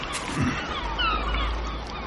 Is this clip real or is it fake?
real